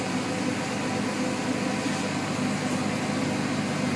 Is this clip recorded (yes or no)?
yes